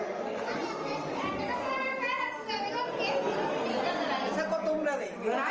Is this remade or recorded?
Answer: recorded